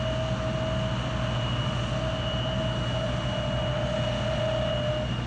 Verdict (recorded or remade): recorded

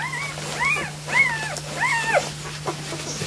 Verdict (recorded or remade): recorded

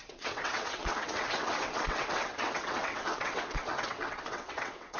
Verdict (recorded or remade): remade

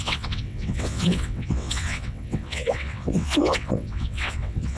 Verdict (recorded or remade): remade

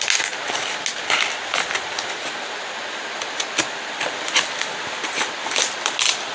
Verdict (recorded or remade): recorded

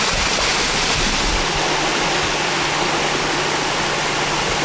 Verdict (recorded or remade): recorded